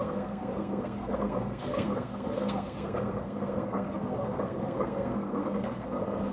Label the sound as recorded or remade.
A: remade